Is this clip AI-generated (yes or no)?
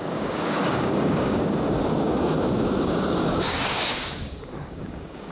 yes